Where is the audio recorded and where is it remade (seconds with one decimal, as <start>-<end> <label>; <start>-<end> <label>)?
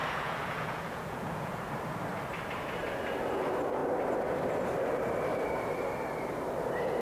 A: 0.0-1.6 remade; 1.6-7.0 recorded